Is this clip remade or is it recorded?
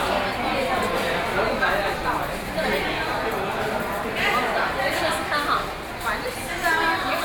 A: recorded